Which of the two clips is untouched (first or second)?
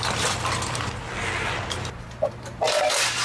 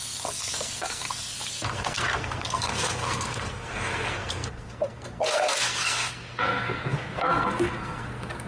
first